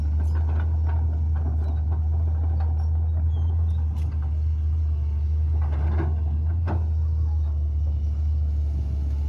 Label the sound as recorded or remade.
recorded